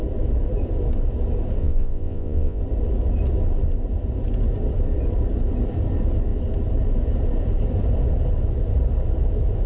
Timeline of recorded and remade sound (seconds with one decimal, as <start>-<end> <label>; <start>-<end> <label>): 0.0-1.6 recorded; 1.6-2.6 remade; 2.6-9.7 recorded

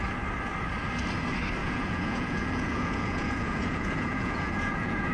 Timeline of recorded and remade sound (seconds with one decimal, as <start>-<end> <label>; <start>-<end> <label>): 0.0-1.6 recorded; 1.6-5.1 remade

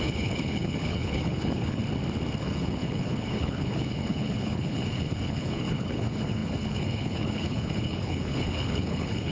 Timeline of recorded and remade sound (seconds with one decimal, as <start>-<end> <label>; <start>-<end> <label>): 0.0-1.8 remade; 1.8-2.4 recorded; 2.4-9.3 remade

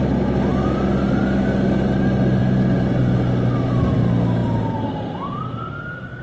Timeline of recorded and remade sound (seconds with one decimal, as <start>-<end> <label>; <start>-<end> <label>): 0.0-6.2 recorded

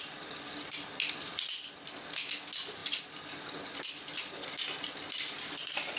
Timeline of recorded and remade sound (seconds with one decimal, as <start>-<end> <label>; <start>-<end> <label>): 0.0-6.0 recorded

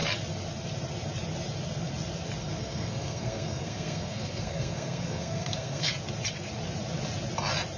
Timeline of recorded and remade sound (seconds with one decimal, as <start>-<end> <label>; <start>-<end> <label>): 0.0-2.4 recorded; 2.4-5.9 remade; 5.9-7.8 recorded

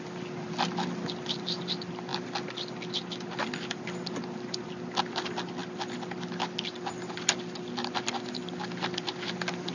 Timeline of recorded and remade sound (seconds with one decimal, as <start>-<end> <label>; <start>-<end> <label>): 0.0-9.7 recorded

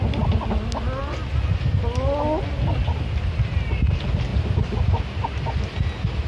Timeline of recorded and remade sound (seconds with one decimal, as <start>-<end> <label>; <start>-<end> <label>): 0.0-1.0 recorded; 1.0-2.4 remade; 2.4-6.3 recorded